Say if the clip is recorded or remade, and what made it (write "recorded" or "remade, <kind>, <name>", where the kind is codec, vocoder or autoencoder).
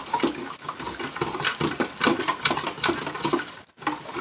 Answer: remade, vocoder, BigVGAN v2